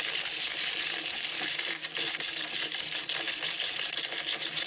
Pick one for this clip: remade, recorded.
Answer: recorded